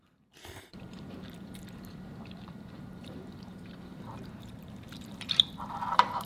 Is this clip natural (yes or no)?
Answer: no